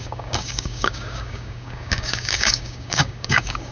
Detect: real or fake fake